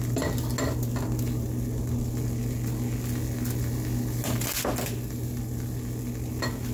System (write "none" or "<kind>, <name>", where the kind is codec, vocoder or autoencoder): none